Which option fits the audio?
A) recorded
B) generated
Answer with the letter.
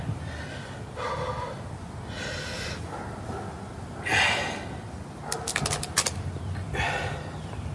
A